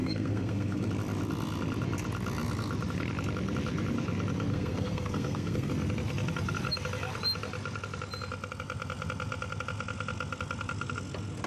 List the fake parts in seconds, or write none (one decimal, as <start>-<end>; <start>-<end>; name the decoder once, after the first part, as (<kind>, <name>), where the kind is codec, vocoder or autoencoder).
0.0-0.9 (codec, SNAC); 4.5-5.7